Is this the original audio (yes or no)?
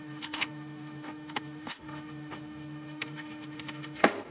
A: no